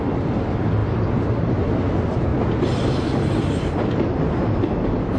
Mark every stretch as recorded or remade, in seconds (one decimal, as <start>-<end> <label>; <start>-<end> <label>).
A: 0.0-5.2 recorded